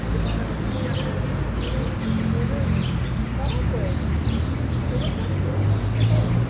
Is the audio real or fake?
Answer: real